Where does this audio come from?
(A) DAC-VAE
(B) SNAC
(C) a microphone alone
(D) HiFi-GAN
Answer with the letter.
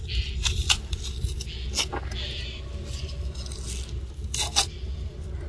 C